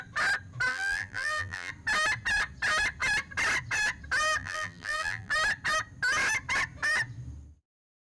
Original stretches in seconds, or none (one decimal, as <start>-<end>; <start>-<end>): 0.0-0.7; 1.7-4.4; 5.3-8.2